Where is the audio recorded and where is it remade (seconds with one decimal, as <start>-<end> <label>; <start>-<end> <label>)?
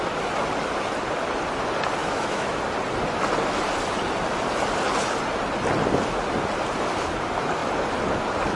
0.0-2.0 recorded; 2.0-2.6 remade; 2.6-8.6 recorded